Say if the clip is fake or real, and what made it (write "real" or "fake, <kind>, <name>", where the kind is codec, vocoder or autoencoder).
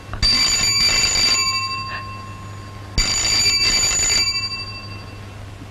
real